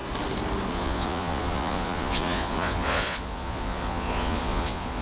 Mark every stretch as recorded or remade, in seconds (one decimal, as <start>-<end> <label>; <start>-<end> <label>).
0.0-0.7 recorded; 0.7-5.0 remade